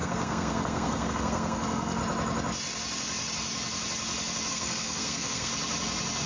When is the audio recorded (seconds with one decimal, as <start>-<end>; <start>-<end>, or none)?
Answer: 2.0-4.5; 5.5-6.3